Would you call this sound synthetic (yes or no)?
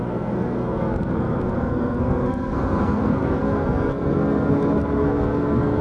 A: yes